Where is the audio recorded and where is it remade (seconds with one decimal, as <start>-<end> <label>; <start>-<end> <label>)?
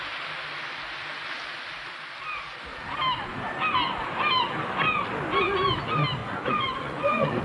0.0-6.2 recorded; 6.2-7.4 remade